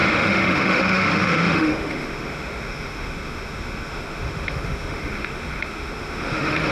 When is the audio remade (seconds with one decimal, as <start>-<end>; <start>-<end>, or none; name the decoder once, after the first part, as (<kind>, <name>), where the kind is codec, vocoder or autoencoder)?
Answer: 0.0-6.7 (autoencoder, DAC-VAE)